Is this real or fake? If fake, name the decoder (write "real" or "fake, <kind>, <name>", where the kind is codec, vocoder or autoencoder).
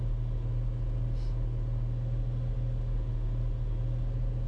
real